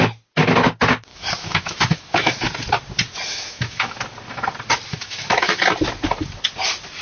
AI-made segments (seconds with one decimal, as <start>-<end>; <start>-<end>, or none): 1.1-2.5; 3.3-4.0; 4.9-5.6